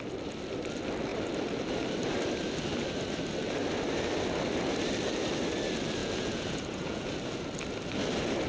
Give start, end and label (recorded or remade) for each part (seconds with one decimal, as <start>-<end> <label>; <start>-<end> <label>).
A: 0.0-6.0 recorded; 6.0-7.1 remade; 7.1-8.5 recorded